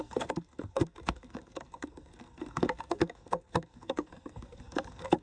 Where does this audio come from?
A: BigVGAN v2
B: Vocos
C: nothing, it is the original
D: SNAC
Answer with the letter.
D